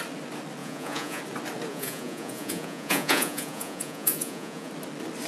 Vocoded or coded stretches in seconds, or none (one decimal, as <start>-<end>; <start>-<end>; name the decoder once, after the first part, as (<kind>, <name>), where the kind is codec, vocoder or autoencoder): 0.6-1.2 (vocoder, Vocos); 1.7-4.7